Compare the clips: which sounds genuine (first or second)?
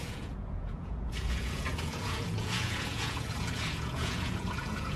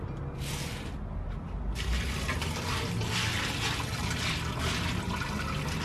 second